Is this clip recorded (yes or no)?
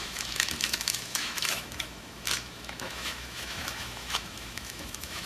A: no